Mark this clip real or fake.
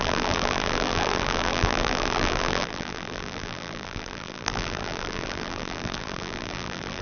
fake